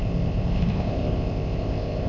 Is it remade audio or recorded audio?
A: remade